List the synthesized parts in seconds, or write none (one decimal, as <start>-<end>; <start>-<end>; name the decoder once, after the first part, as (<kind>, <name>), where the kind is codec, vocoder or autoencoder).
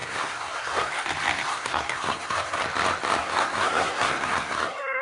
0.0-0.9 (codec, SNAC); 1.5-2.6; 3.2-5.0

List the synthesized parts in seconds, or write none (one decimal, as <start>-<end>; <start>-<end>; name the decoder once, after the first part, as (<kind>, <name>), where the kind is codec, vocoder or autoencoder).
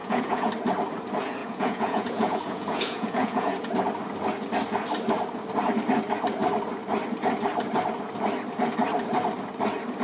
0.0-0.5 (vocoder, Vocos); 1.4-3.7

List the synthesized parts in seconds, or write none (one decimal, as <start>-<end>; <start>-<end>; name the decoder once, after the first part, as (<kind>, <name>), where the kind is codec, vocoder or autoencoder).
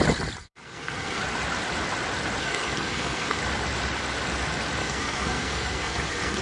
0.4-1.2 (codec, SNAC); 2.4-3.4; 4.8-6.4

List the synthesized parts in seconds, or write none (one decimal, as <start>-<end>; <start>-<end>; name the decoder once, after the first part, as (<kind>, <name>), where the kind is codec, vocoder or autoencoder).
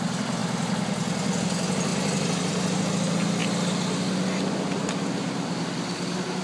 none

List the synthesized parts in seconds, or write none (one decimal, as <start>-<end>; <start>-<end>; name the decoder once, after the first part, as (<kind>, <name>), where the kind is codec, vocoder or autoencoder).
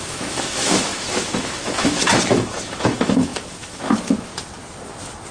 0.0-4.3 (autoencoder, DAC-VAE)